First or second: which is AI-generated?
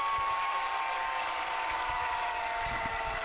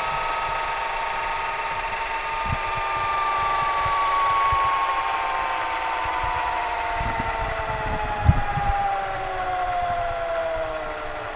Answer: first